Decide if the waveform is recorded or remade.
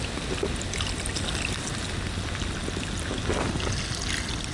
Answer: recorded